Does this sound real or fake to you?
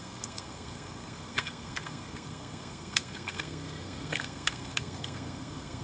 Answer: fake